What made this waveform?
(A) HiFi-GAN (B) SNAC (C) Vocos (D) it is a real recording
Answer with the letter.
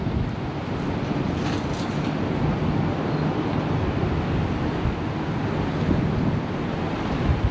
D